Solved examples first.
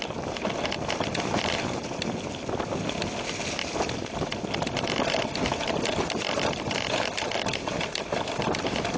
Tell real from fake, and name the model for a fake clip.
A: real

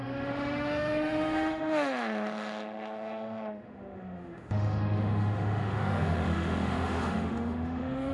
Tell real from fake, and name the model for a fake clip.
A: fake, autoencoder, DAC-VAE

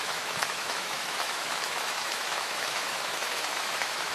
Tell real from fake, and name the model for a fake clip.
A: fake, autoencoder, DAC-VAE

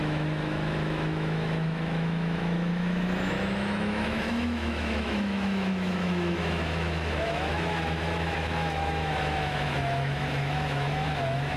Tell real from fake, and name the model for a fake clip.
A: fake, autoencoder, DAC-VAE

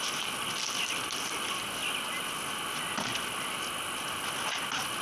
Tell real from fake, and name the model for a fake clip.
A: real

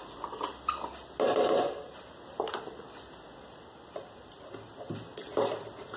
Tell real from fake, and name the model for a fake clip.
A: real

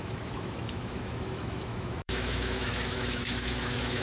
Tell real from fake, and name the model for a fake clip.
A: fake, autoencoder, DAC-VAE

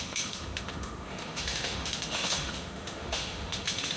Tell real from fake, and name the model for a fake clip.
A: fake, autoencoder, DAC-VAE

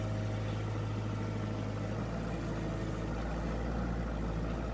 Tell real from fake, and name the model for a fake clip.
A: real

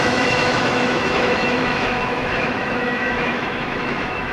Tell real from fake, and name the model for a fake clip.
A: fake, autoencoder, DAC-VAE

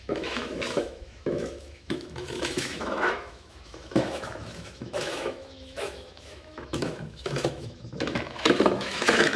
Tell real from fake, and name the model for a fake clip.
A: fake, autoencoder, DAC-VAE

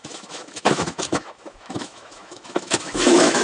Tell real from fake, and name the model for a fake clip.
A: fake, autoencoder, DAC-VAE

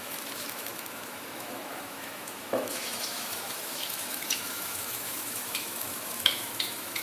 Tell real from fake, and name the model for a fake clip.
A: fake, autoencoder, DAC-VAE